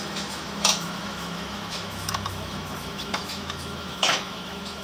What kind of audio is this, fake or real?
fake